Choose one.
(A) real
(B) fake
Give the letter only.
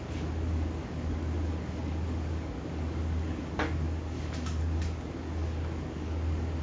B